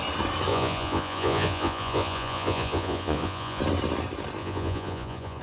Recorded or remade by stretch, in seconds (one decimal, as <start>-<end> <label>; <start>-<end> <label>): 0.0-0.5 recorded; 0.5-3.6 remade; 3.6-4.4 recorded; 4.4-5.4 remade